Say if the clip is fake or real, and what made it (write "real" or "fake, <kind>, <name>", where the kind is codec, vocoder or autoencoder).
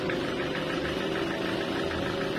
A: real